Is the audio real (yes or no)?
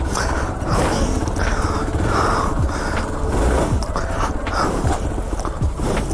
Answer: yes